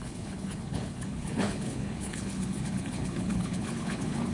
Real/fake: fake